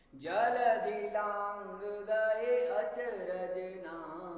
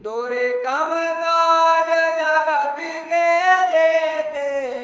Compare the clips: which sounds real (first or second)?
first